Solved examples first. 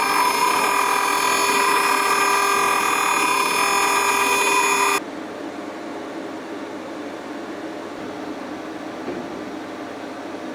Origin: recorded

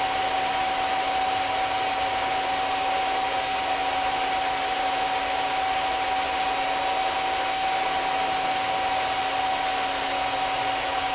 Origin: recorded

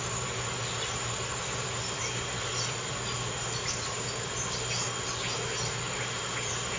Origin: recorded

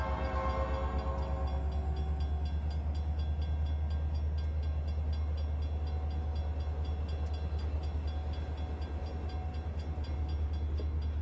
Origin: recorded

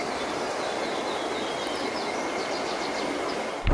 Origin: recorded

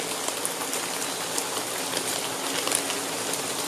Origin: recorded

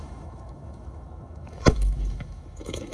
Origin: remade